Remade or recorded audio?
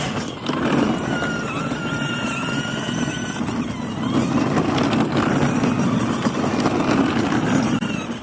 recorded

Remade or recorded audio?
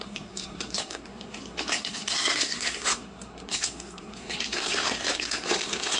remade